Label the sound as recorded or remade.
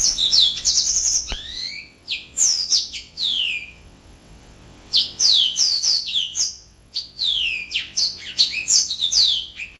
remade